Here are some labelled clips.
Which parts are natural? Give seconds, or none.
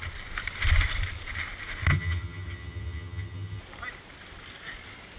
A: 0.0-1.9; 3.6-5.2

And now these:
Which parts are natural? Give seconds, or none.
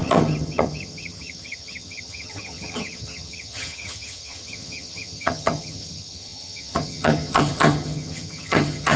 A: none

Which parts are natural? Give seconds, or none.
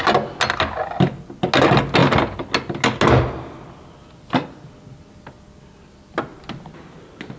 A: 0.0-7.4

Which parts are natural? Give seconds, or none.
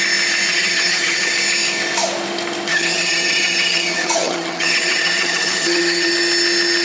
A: 0.0-0.5; 1.3-2.7; 6.1-6.8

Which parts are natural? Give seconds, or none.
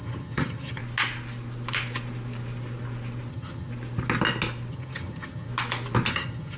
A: 0.8-3.3; 3.7-4.7; 5.5-6.1